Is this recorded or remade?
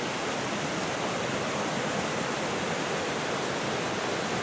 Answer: recorded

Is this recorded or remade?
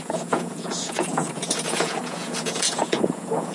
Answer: remade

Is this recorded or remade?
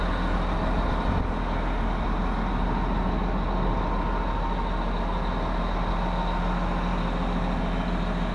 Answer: recorded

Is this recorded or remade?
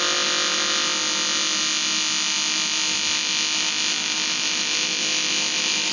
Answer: recorded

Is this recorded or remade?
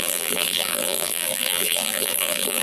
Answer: remade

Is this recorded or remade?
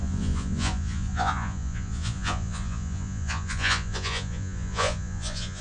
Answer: remade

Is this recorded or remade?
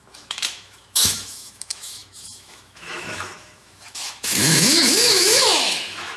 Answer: remade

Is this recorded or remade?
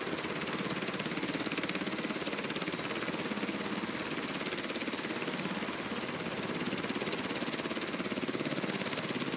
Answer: recorded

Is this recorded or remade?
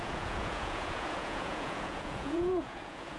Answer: remade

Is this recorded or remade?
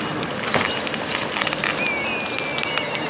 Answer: recorded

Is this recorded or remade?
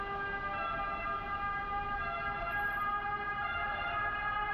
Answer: recorded